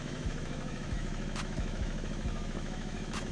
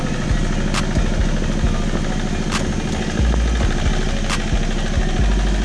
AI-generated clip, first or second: first